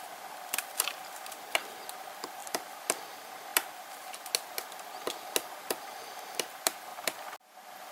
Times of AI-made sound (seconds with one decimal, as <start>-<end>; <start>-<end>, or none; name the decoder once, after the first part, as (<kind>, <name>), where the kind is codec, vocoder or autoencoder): none